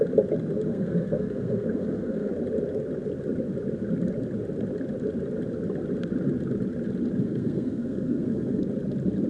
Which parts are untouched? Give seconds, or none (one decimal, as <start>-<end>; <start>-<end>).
0.0-0.7; 2.3-7.2; 8.6-9.3